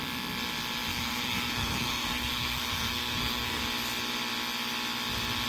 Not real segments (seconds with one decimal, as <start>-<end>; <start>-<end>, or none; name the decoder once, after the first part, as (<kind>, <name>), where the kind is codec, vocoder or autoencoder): 0.9-3.6 (codec, SNAC)